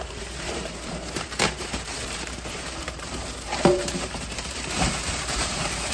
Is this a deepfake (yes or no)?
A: yes